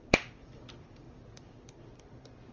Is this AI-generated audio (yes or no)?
yes